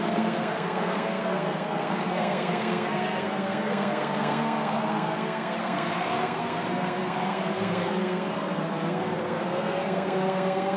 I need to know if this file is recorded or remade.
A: remade